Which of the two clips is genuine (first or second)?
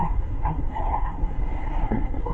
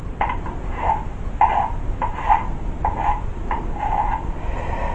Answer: second